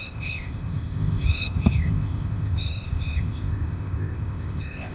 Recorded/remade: remade